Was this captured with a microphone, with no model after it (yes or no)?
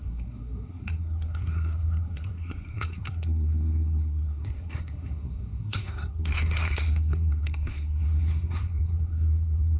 no